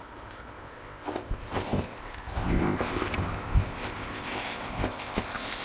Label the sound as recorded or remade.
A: remade